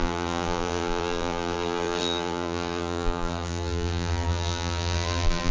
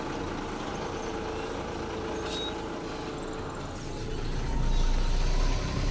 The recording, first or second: second